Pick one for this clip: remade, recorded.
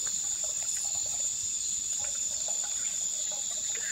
remade